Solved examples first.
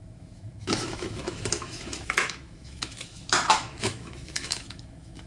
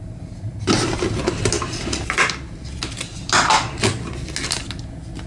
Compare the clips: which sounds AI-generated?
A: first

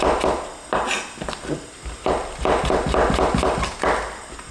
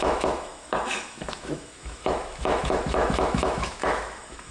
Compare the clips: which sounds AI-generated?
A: second